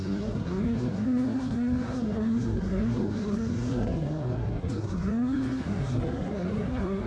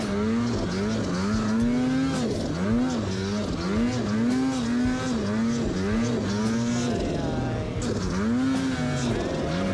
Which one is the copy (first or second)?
first